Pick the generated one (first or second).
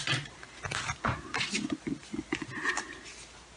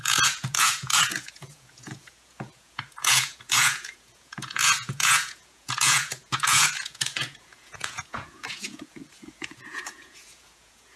second